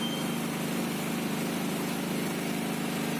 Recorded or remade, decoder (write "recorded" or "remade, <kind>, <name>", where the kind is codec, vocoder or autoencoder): recorded